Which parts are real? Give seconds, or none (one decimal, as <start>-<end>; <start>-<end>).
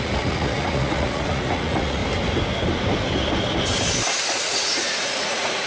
2.0-4.4